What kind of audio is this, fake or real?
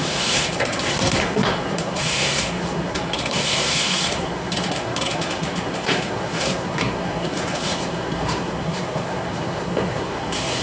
fake